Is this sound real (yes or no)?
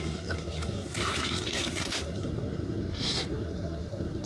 no